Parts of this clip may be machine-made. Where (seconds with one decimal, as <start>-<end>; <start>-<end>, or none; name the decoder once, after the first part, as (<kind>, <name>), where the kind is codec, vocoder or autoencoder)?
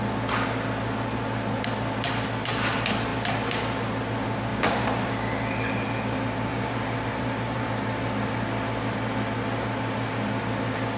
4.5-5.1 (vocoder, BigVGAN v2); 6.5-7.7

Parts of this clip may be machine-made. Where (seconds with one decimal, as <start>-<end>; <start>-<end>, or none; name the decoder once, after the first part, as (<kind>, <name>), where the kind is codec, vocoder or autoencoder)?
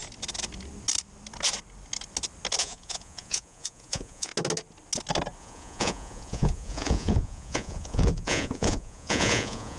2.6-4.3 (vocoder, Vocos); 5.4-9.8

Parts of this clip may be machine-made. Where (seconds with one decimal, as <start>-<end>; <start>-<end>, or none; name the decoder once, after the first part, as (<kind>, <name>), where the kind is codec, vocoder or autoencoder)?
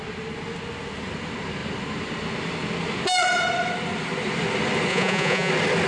4.9-5.5 (vocoder, Vocos)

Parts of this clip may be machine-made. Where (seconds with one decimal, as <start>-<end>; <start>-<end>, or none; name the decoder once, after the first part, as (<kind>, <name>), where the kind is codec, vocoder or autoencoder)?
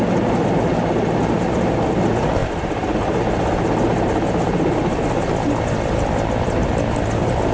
none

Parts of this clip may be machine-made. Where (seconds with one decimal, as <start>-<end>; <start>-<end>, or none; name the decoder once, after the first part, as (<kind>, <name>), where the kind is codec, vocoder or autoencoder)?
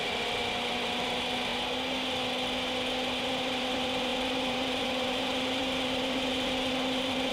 0.0-1.5 (vocoder, BigVGAN v2); 3.2-7.3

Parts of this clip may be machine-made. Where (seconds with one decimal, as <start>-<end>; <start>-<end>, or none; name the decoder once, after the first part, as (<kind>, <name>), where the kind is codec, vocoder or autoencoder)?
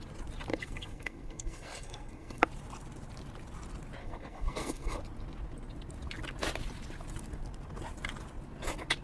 0.5-2.4 (codec, SNAC); 4.0-5.0